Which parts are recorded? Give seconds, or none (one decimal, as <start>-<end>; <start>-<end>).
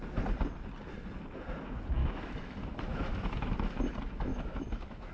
0.0-2.0; 3.8-4.3